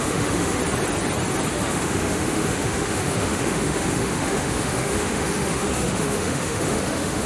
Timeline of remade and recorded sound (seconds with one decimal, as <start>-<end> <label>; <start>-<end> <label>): 0.0-0.6 remade; 0.6-1.5 recorded; 1.5-7.3 remade